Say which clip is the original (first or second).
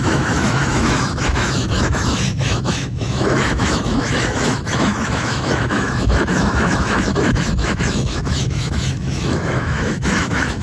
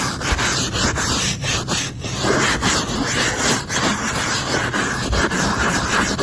second